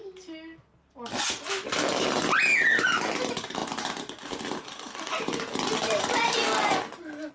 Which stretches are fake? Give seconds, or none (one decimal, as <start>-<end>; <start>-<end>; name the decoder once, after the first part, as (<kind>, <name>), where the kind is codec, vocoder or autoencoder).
none

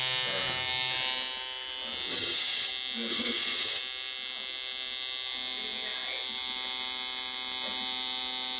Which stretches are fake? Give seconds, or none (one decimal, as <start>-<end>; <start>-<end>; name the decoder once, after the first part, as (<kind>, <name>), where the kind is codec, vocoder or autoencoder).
2.1-2.7 (vocoder, HiFi-GAN); 3.1-3.8

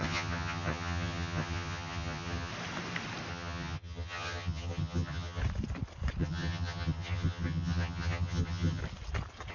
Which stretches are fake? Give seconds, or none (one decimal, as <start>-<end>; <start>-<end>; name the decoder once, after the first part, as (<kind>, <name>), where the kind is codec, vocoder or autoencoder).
0.0-2.5 (vocoder, HiFi-GAN); 3.3-5.4; 6.2-8.8

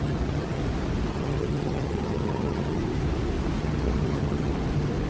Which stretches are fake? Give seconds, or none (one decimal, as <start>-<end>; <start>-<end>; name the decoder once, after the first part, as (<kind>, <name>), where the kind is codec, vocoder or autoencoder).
0.0-0.6 (vocoder, HiFi-GAN); 1.1-2.8; 3.6-4.5

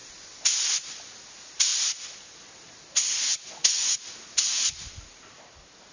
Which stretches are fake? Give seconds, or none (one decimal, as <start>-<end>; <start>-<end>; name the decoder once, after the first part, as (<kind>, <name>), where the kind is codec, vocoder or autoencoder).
none